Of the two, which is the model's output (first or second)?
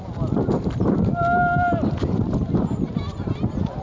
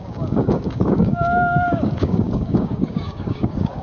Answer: second